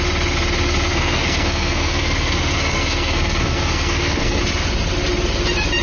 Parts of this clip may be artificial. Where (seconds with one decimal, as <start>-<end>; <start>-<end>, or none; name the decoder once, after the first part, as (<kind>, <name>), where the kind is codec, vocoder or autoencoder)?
0.9-4.4 (codec, SNAC)